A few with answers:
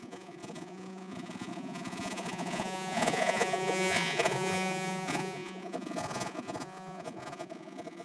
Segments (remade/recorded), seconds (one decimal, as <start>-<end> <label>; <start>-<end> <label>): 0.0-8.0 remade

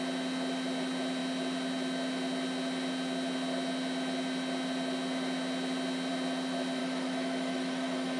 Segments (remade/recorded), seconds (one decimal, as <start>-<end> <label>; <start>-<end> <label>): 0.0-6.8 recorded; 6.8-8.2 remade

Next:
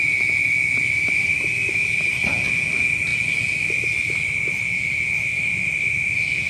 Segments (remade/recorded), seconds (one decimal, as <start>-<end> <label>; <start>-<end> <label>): 0.0-6.5 recorded

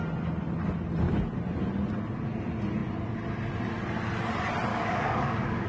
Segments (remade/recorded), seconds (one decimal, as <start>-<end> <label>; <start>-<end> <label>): 0.0-4.7 recorded; 4.7-5.7 remade

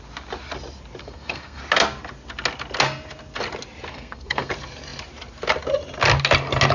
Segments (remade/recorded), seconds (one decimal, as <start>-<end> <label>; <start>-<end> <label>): 0.0-1.0 recorded; 1.0-1.6 remade; 1.6-3.9 recorded; 3.9-4.5 remade; 4.5-6.7 recorded

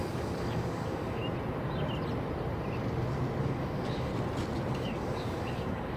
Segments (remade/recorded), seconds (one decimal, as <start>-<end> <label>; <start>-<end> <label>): 0.0-1.2 remade; 1.2-3.4 recorded; 3.4-4.1 remade; 4.1-4.7 recorded; 4.7-6.0 remade

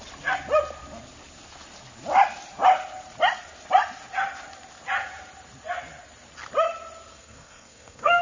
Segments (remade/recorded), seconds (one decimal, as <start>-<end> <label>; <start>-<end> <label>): 0.0-7.1 recorded; 7.1-8.2 remade